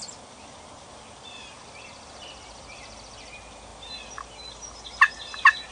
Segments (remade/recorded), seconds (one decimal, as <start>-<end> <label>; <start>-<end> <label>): 0.0-5.7 recorded